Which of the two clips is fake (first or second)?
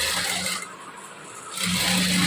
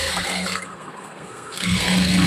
second